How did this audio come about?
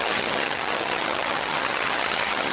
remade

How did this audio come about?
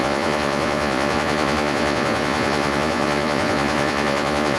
remade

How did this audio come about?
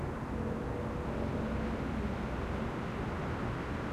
recorded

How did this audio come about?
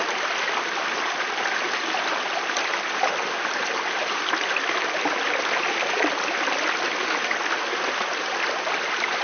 recorded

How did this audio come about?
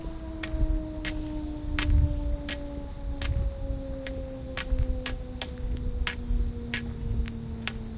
recorded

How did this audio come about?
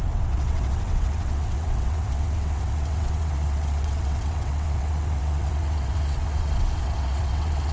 remade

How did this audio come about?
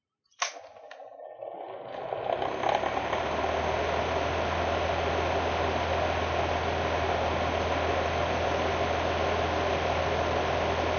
recorded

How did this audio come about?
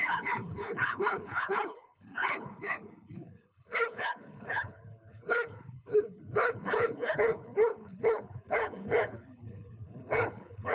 remade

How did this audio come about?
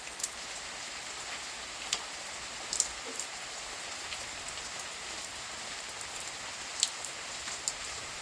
recorded